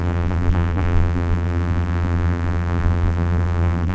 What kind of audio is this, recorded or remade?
remade